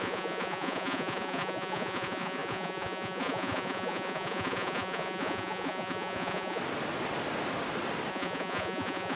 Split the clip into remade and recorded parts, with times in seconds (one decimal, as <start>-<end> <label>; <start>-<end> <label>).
0.0-6.6 remade; 6.6-8.1 recorded; 8.1-9.2 remade